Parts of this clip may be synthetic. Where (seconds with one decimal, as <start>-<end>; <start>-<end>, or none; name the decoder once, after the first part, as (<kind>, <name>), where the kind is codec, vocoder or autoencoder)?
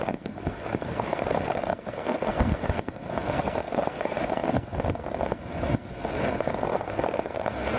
0.0-7.8 (codec, SNAC)